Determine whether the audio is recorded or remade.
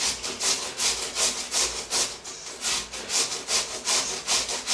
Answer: recorded